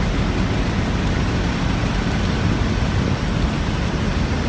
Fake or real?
real